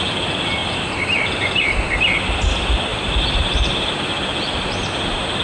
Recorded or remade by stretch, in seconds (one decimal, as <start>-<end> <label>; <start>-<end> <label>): 0.0-0.6 recorded; 0.6-2.0 remade; 2.0-2.9 recorded; 2.9-4.0 remade; 4.0-5.4 recorded